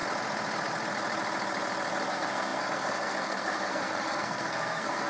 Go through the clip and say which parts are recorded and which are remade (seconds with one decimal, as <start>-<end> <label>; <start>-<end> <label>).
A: 0.0-2.1 recorded; 2.1-5.1 remade